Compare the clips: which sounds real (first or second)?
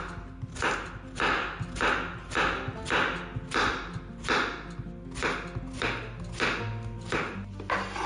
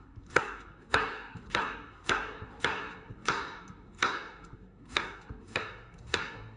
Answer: first